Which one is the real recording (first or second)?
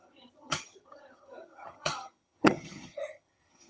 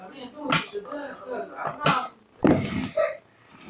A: second